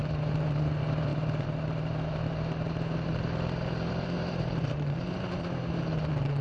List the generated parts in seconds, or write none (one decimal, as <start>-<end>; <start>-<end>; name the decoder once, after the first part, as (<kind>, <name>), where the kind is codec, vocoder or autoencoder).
0.0-6.4 (vocoder, BigVGAN v2)